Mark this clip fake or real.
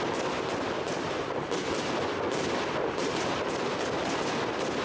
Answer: real